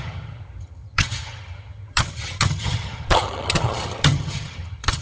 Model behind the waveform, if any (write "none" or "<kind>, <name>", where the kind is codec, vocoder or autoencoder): vocoder, HiFi-GAN